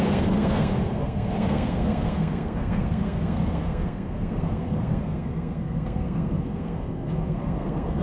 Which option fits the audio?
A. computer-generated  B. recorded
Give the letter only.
A